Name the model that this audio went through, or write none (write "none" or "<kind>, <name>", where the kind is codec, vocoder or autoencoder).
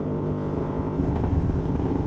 codec, ZipCodec